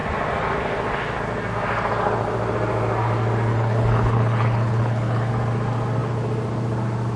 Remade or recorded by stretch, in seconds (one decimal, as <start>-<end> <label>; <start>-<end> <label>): 0.0-3.5 recorded; 3.5-5.3 remade; 5.3-7.2 recorded